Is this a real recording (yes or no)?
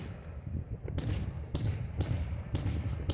yes